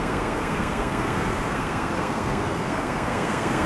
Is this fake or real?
fake